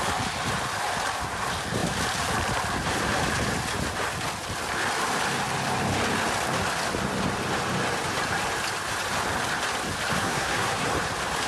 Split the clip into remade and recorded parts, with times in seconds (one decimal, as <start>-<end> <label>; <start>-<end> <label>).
0.0-10.1 recorded; 10.1-10.9 remade; 10.9-11.5 recorded